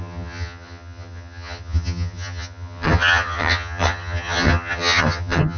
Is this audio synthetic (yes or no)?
yes